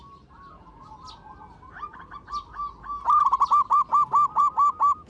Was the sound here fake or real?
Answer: real